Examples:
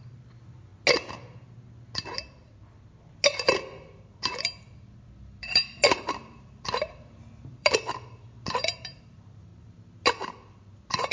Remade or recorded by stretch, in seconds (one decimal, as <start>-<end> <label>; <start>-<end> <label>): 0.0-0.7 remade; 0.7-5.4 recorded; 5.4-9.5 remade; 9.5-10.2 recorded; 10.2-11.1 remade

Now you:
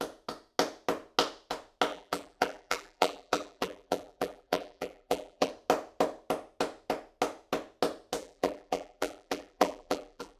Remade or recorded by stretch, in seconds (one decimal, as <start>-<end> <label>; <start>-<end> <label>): 0.0-1.9 recorded; 1.9-5.5 remade; 5.5-8.2 recorded; 8.2-10.4 remade

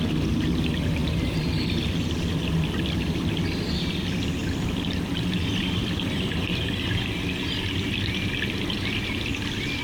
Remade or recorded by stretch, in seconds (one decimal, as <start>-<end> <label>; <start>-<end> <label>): 0.0-1.0 recorded; 1.0-2.3 remade; 2.3-4.4 recorded; 4.4-7.0 remade; 7.0-9.8 recorded